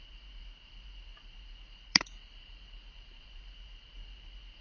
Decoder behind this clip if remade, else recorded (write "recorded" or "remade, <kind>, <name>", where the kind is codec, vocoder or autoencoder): remade, vocoder, BigVGAN v2